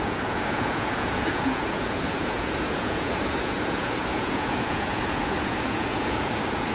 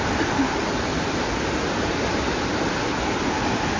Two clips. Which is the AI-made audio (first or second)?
first